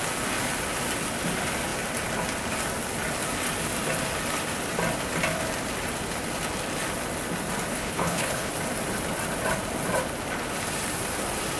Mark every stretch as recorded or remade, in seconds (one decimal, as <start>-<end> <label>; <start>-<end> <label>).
0.0-7.7 recorded; 7.7-8.5 remade; 8.5-11.6 recorded